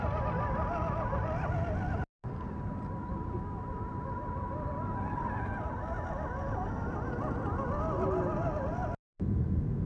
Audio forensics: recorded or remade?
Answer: recorded